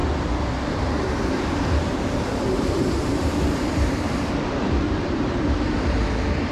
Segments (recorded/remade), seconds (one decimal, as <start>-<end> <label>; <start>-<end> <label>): 0.0-0.6 recorded; 0.6-6.5 remade